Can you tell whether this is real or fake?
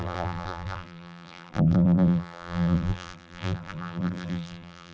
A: fake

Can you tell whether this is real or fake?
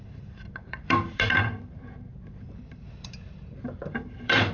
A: fake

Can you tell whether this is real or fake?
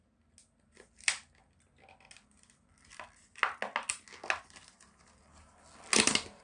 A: real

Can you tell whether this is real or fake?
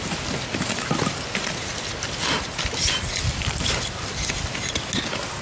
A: real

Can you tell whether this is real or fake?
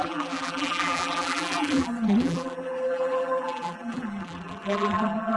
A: fake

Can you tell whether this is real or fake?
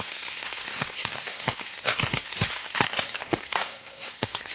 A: fake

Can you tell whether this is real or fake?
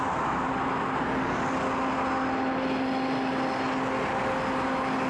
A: real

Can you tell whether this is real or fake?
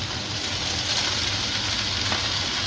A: real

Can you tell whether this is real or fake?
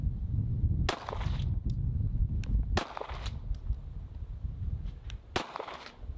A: real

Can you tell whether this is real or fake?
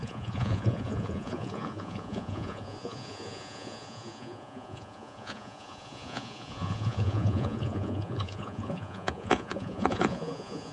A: fake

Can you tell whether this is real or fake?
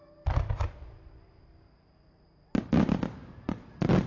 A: real